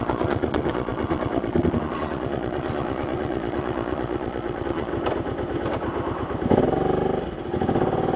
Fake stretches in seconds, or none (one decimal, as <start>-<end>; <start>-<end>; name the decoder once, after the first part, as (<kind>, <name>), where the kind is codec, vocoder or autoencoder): 0.0-4.9 (vocoder, Vocos)